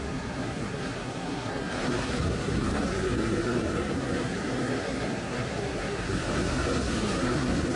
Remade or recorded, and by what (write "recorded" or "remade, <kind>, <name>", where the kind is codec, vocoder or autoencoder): remade, codec, SNAC